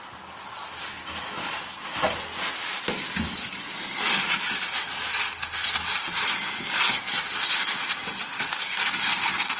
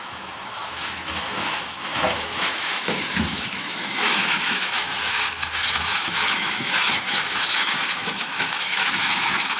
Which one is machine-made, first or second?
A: second